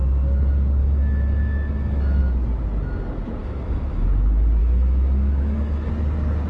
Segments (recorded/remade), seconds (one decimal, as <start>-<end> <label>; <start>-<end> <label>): 0.0-0.8 recorded; 0.8-2.2 remade; 2.2-3.4 recorded; 3.4-4.1 remade; 4.1-4.6 recorded; 4.6-5.9 remade; 5.9-6.5 recorded